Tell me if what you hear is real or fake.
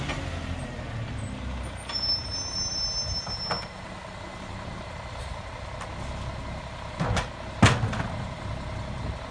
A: real